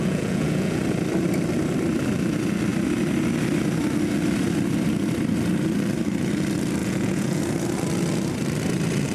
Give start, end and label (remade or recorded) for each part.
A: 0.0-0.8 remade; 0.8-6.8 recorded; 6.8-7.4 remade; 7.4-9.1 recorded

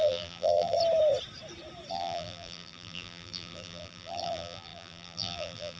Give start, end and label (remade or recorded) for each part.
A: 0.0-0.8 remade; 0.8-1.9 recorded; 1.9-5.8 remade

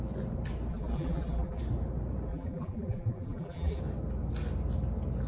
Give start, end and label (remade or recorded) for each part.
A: 0.0-0.7 recorded; 0.7-1.6 remade; 1.6-2.3 recorded; 2.3-3.8 remade; 3.8-5.3 recorded

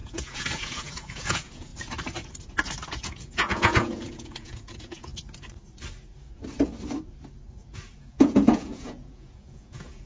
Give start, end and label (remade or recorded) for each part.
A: 0.0-1.7 remade; 1.7-2.9 recorded; 2.9-5.1 remade; 5.1-8.0 recorded; 8.0-10.1 remade

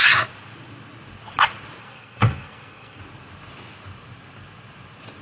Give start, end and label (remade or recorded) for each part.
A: 0.0-1.8 recorded; 1.8-3.0 remade; 3.0-5.2 recorded

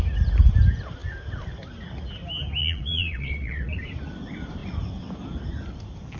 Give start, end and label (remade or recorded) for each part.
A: 0.0-2.6 recorded; 2.6-3.7 remade; 3.7-6.2 recorded

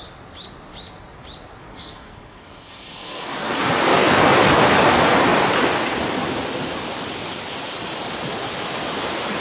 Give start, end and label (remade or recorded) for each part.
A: 0.0-1.6 recorded; 1.6-4.2 remade; 4.2-9.4 recorded

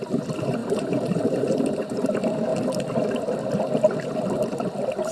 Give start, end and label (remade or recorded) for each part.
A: 0.0-0.6 recorded; 0.6-2.1 remade; 2.1-5.1 recorded